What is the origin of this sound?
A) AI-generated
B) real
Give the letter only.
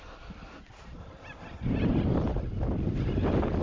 B